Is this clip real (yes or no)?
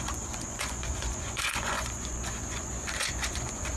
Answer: no